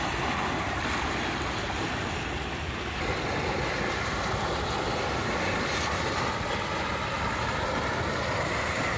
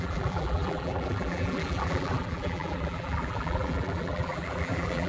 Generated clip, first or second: second